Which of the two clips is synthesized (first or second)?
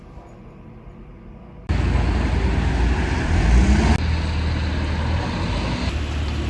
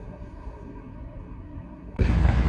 second